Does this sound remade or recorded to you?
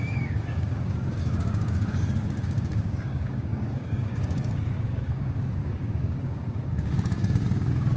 remade